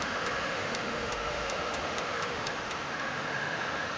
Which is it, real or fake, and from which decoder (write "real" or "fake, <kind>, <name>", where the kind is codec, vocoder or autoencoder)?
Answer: fake, autoencoder, DAC-VAE